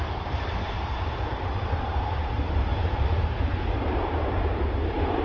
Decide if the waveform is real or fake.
fake